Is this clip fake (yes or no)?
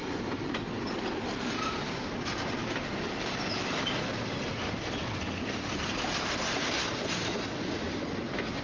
no